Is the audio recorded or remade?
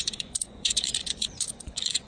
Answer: remade